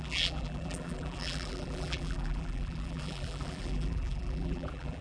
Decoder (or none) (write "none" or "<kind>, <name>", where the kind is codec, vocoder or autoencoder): vocoder, BigVGAN v2